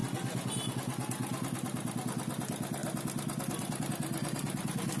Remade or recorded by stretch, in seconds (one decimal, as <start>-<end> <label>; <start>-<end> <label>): 0.0-5.0 recorded